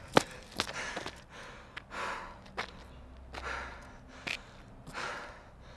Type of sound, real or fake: real